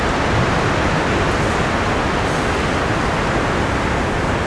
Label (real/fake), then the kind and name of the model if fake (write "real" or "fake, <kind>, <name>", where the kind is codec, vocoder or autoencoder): real